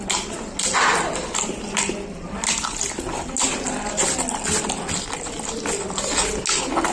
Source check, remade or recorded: recorded